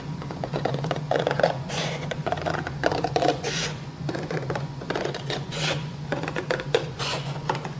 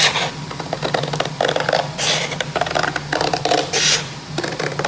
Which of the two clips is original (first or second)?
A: second